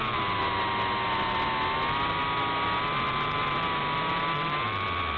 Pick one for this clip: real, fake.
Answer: real